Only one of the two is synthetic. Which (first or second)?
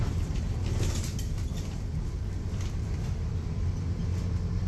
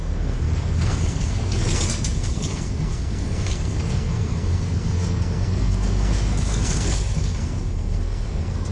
second